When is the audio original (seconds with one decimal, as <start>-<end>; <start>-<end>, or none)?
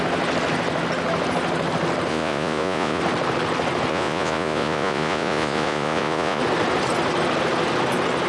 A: 0.0-2.1; 3.0-3.9; 6.4-8.3